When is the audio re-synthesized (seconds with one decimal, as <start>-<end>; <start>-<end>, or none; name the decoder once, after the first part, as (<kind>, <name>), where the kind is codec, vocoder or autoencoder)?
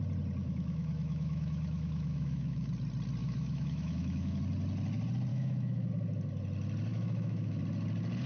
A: 0.4-2.7 (autoencoder, DAC-VAE); 3.2-4.4; 5.3-5.9; 6.9-7.6